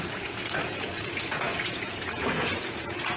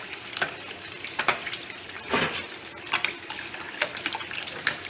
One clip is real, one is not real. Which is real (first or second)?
second